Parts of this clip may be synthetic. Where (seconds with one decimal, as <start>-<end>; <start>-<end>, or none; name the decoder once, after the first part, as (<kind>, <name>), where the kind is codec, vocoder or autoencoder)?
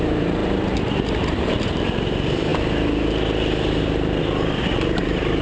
0.0-5.4 (vocoder, BigVGAN v2)